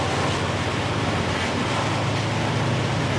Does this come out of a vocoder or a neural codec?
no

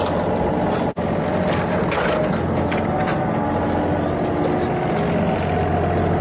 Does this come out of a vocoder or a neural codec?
no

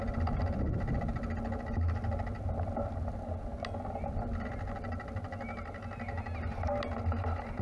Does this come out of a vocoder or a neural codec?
no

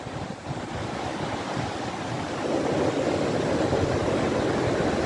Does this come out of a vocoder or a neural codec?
no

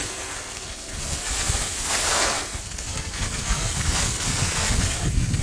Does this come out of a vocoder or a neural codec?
yes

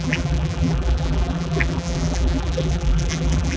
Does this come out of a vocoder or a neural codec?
yes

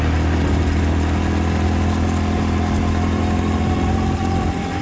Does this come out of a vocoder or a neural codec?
no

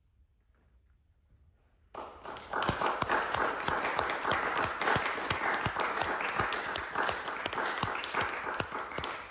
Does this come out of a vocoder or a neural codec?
no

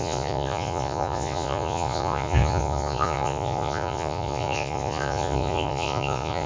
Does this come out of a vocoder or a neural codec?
yes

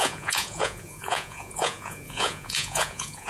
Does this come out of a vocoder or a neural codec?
yes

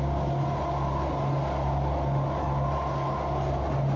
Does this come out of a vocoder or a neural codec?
no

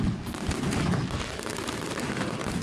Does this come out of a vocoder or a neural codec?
no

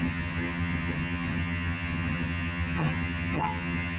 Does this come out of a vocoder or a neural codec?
yes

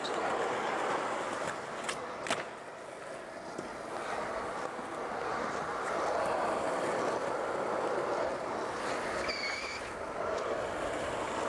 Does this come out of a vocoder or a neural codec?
no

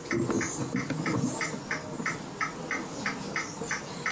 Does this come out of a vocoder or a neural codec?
no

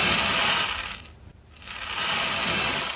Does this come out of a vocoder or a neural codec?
no